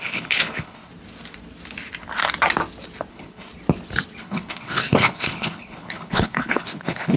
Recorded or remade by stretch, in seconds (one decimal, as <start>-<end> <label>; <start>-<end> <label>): 0.0-0.9 remade; 0.9-3.1 recorded; 3.1-3.5 remade; 3.5-4.2 recorded; 4.2-7.2 remade